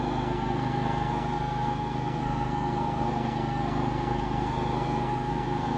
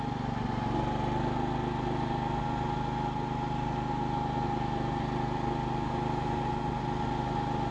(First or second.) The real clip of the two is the second